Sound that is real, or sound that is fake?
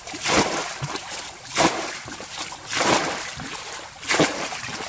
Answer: fake